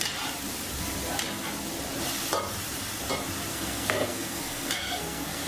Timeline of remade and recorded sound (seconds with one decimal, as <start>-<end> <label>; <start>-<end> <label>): 0.0-3.5 recorded; 3.5-5.5 remade